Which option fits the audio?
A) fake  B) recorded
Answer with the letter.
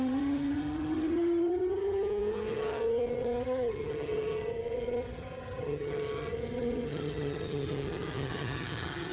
A